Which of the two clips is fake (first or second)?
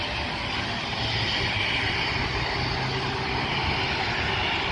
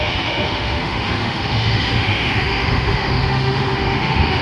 second